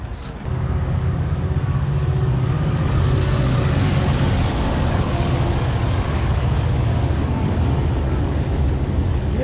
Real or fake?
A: fake